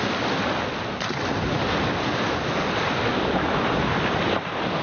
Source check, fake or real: real